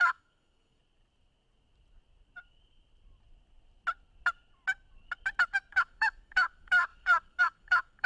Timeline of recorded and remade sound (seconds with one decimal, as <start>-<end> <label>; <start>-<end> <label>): 0.0-0.8 remade; 0.8-5.7 recorded; 5.7-8.1 remade